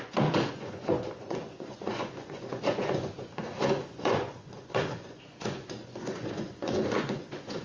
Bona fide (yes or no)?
no